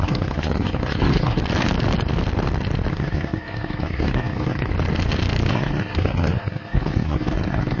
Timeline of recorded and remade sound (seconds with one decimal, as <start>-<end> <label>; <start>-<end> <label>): 0.0-1.4 remade; 1.4-2.9 recorded; 2.9-4.7 remade; 4.7-5.5 recorded; 5.5-7.8 remade